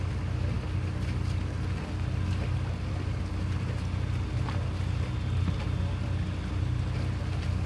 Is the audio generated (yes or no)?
no